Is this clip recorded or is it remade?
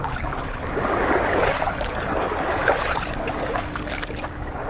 remade